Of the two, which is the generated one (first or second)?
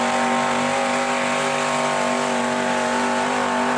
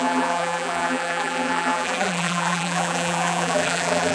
second